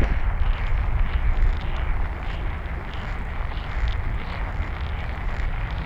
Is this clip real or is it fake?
real